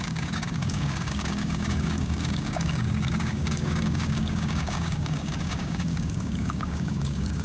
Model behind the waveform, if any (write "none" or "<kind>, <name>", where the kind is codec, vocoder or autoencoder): codec, DAC